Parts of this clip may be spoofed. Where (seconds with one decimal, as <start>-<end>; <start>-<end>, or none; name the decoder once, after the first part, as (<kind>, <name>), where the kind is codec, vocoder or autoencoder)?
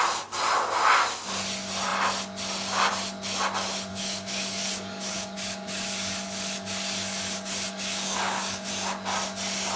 3.9-8.7 (codec, DAC)